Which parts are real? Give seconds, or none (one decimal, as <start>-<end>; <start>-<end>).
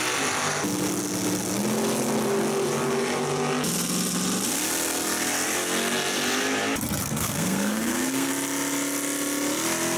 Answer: 0.0-7.0; 8.3-10.0